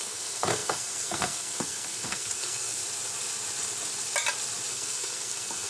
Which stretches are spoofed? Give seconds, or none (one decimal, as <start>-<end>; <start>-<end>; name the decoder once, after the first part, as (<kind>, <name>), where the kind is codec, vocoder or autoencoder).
0.0-2.8 (codec, SNAC); 4.7-5.7